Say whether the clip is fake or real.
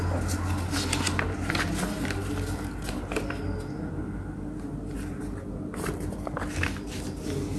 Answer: real